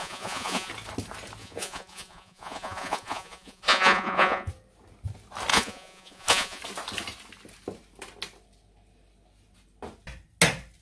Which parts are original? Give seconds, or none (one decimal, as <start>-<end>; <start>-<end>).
0.7-1.4; 4.5-5.5; 6.6-10.8

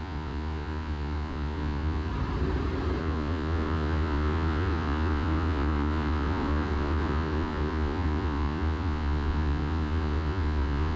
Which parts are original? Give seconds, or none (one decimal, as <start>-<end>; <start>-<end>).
2.1-3.0

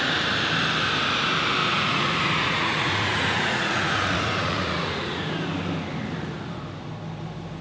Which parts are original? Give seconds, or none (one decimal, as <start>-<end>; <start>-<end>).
0.0-1.6; 5.2-7.6

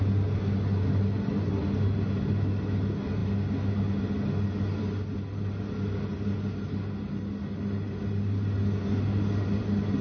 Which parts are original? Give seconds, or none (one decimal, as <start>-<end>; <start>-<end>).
0.0-10.0

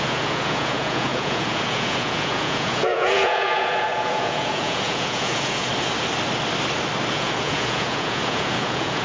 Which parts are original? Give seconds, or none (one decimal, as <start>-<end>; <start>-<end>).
5.7-7.1

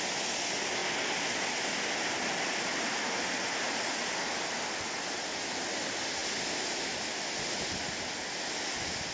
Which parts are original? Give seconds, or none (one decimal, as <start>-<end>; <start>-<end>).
0.0-9.1

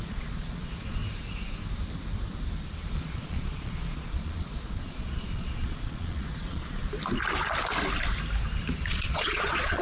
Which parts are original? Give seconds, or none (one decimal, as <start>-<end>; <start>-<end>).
1.0-2.9; 6.8-8.9